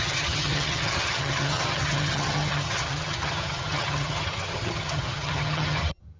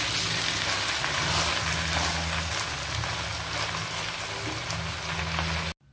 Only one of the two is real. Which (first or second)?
second